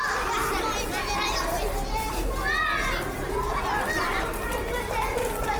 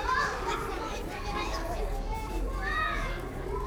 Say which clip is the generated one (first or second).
second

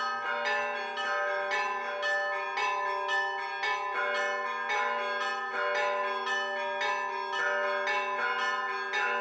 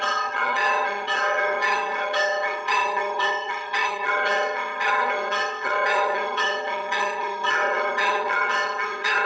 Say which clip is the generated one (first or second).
second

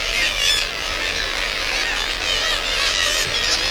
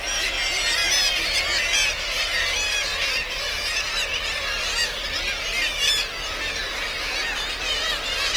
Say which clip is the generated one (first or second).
first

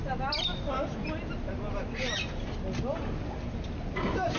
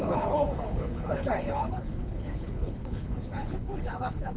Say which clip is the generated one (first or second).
second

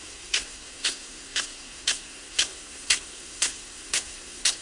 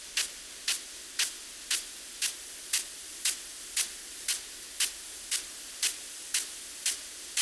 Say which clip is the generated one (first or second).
first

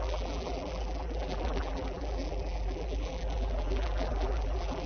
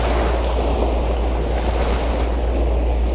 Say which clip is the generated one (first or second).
first